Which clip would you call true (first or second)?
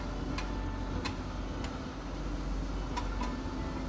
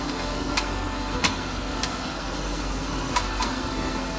first